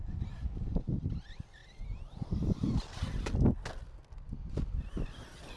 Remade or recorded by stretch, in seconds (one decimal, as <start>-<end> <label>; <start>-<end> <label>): 0.0-5.6 recorded